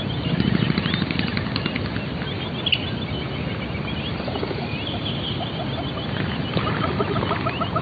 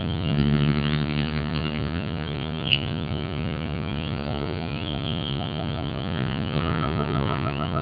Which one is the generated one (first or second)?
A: second